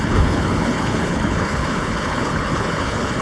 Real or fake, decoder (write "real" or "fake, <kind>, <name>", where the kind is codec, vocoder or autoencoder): fake, codec, HILCodec